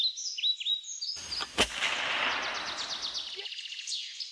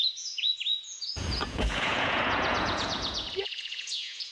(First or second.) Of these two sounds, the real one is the first